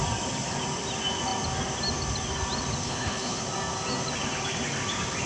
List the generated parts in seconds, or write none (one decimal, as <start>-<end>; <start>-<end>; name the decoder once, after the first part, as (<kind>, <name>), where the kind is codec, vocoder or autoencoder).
2.8-3.4 (codec, HILCodec)